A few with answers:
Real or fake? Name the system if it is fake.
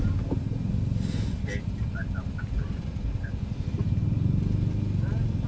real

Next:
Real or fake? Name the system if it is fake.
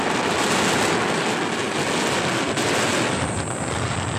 real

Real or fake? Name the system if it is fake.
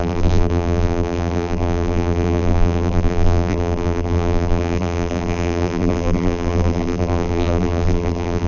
fake, vocoder, BigVGAN v2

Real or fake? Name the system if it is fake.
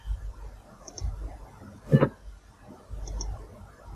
real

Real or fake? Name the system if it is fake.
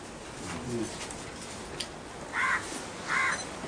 real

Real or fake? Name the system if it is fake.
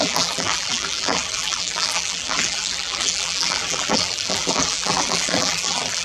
fake, vocoder, BigVGAN v2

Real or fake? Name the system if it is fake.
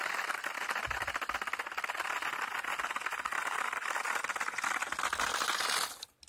real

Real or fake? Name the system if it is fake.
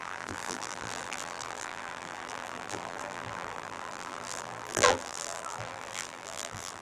fake, vocoder, BigVGAN v2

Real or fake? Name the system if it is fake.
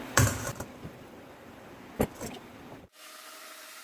fake, vocoder, BigVGAN v2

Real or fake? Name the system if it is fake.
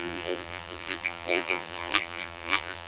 fake, vocoder, BigVGAN v2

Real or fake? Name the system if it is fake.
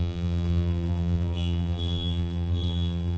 fake, vocoder, BigVGAN v2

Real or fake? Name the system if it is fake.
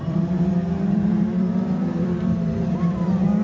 fake, vocoder, BigVGAN v2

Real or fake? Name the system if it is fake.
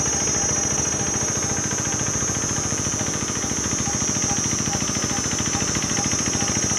real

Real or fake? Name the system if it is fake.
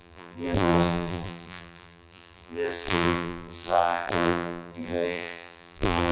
fake, vocoder, BigVGAN v2